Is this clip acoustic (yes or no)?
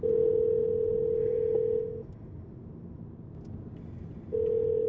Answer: yes